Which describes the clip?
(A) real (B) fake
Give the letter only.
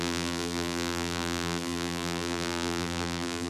B